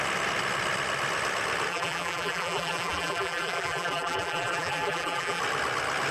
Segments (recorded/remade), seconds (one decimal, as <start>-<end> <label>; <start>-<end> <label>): 0.0-1.7 recorded; 1.7-5.4 remade; 5.4-6.1 recorded